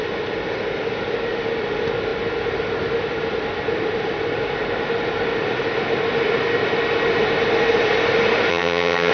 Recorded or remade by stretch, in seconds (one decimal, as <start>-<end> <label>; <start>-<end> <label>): 0.0-8.5 recorded; 8.5-9.1 remade